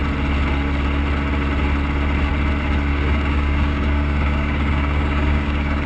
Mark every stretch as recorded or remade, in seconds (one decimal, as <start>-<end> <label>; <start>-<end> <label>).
0.0-2.9 recorded; 2.9-5.9 remade